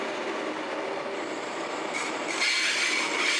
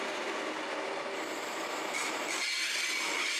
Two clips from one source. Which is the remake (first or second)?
first